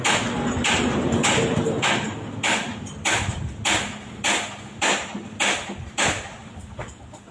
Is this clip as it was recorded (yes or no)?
yes